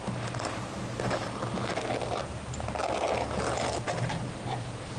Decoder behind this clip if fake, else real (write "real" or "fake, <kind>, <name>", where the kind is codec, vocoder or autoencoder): real